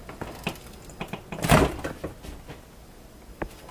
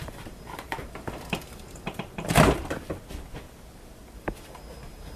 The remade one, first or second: second